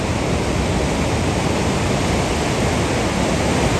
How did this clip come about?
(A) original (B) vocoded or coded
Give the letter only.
A